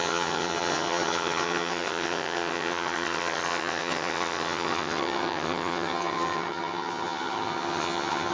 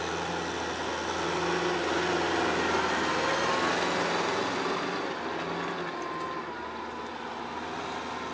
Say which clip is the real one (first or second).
second